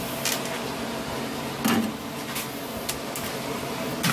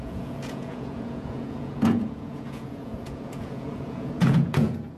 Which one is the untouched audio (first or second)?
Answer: first